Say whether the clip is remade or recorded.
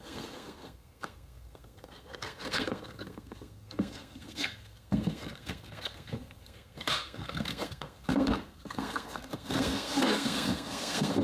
remade